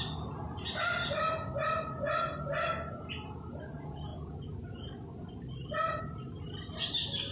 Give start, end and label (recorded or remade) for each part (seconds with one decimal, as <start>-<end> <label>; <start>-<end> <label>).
0.0-7.3 recorded